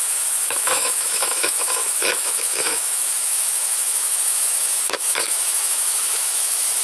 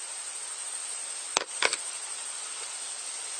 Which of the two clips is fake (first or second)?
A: first